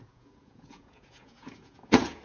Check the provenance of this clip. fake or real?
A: fake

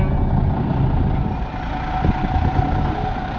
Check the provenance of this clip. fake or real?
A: real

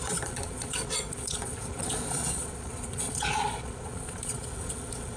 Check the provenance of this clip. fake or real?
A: fake